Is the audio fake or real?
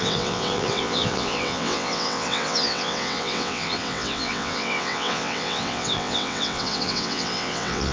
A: fake